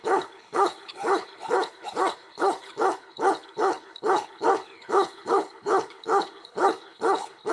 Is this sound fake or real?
fake